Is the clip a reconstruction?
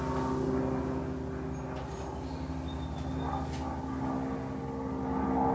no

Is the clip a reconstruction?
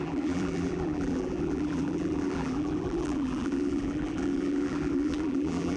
yes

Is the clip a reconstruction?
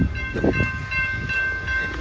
no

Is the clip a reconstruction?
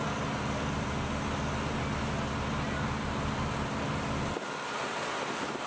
no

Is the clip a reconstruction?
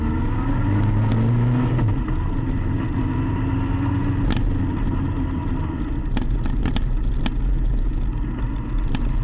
no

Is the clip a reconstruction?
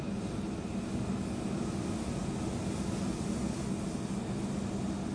no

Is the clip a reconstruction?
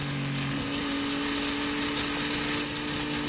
no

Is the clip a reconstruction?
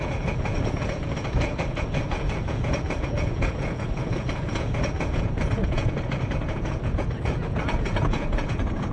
yes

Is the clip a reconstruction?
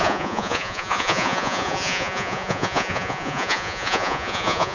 yes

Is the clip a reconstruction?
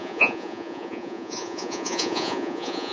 yes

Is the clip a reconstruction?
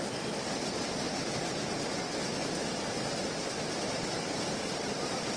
no